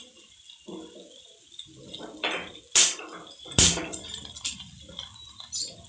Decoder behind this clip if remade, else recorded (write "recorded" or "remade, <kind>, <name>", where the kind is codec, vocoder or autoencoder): recorded